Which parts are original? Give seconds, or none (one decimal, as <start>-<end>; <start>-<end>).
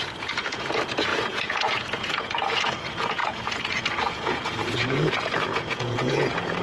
none